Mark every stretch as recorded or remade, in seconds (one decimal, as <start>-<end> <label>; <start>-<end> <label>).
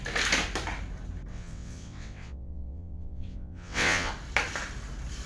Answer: 0.0-1.3 recorded; 1.3-4.1 remade; 4.1-5.3 recorded